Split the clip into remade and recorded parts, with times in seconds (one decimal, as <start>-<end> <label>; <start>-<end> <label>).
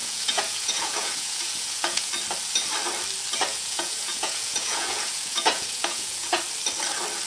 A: 0.0-2.1 remade; 2.1-3.5 recorded; 3.5-6.4 remade; 6.4-7.3 recorded